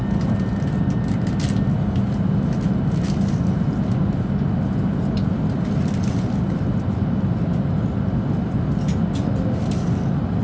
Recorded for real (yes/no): yes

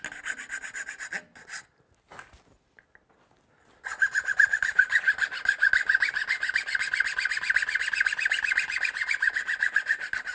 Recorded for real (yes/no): yes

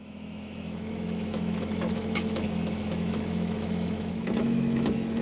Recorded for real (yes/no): no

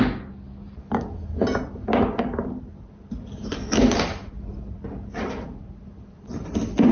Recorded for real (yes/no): yes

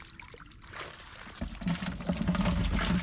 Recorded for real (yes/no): yes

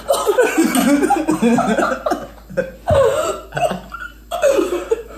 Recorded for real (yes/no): yes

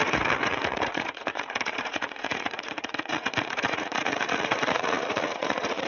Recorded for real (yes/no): no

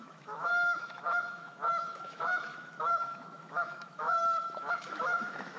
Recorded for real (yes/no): no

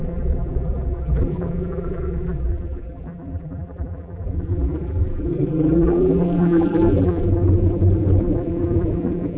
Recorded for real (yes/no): no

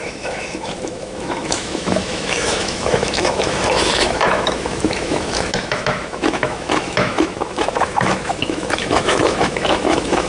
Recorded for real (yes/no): no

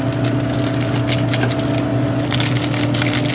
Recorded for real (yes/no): yes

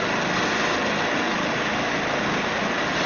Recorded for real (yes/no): yes